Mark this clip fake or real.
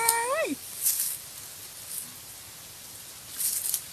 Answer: real